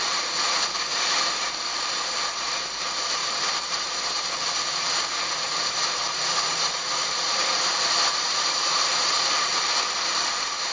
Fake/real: fake